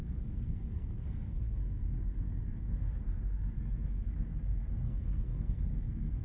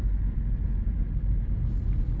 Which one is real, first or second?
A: second